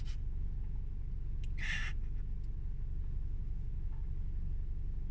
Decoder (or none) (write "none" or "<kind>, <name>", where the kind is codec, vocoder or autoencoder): none